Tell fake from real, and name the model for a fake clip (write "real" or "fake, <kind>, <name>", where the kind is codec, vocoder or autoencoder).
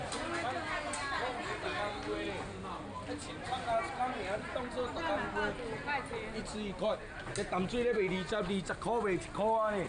real